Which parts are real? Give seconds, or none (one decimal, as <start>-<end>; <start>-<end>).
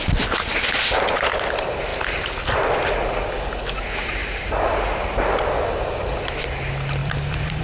0.0-1.9; 2.8-7.0